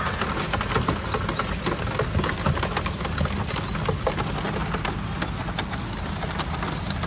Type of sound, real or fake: real